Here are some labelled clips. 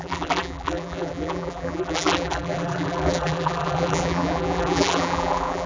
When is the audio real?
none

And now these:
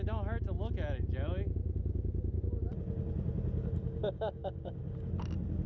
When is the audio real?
0.0-5.7

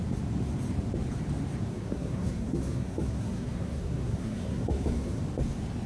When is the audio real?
0.0-1.7; 5.2-5.9

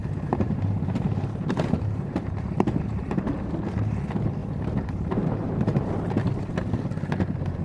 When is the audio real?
3.3-4.4; 5.9-7.6

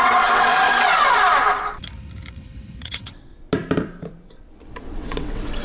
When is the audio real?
0.5-2.3; 3.3-4.8